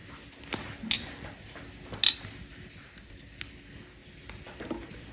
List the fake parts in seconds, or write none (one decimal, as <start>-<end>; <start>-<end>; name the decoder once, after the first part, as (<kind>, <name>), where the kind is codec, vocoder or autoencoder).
none

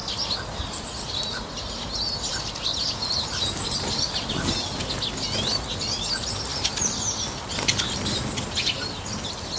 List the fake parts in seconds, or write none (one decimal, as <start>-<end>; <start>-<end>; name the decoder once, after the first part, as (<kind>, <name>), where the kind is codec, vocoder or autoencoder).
none

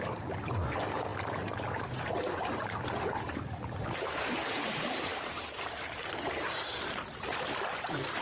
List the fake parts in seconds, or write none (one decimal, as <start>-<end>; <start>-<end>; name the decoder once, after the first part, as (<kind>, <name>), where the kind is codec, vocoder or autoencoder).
0.0-8.2 (vocoder, BigVGAN v2)

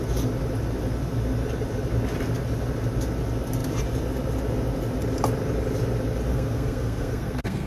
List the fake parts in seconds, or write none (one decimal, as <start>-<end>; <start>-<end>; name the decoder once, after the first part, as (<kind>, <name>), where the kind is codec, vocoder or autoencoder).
6.3-7.7 (codec, SNAC)

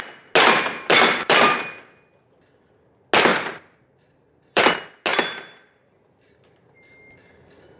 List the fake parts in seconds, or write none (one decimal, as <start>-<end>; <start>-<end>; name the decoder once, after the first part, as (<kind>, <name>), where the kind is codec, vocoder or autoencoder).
0.7-1.6 (vocoder, BigVGAN v2); 3.3-4.6; 5.1-6.9

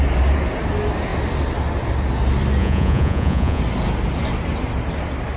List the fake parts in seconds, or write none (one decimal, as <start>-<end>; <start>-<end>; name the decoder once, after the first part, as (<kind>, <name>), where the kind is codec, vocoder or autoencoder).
2.6-3.6 (vocoder, Vocos)